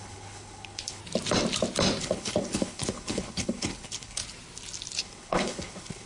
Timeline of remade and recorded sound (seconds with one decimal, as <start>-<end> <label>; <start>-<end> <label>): 0.0-1.0 remade; 1.0-2.0 recorded; 2.0-4.2 remade; 4.2-5.0 recorded; 5.0-6.1 remade